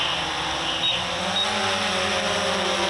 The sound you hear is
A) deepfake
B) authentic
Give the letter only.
B